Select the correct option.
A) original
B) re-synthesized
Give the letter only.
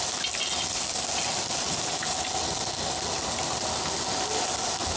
A